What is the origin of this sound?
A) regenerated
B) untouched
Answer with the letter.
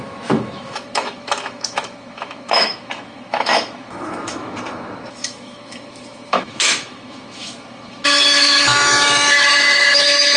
A